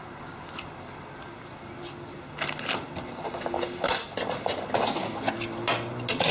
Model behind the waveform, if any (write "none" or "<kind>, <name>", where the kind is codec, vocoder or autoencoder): none